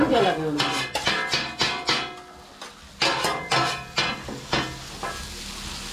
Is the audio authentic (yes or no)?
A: yes